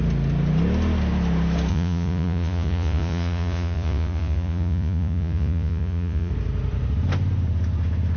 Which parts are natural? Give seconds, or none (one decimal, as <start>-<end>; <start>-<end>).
0.0-1.7; 6.3-8.2